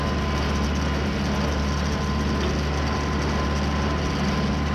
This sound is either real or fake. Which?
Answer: real